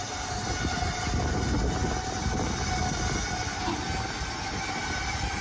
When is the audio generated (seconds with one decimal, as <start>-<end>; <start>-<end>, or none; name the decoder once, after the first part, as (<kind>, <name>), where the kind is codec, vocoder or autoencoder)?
none